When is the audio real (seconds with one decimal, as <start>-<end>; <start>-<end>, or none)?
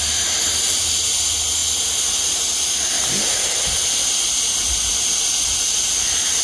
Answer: 0.0-6.4